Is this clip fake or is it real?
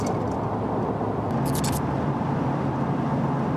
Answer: real